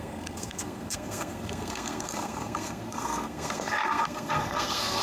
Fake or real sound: fake